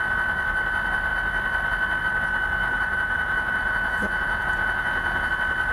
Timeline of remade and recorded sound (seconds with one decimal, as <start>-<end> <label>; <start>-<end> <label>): 0.0-2.6 recorded; 2.6-5.3 remade; 5.3-5.7 recorded